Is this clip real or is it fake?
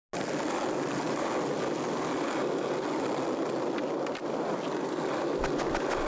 real